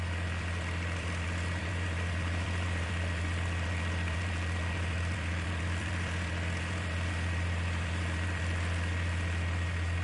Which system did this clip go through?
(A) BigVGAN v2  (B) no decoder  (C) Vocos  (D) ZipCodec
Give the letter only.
A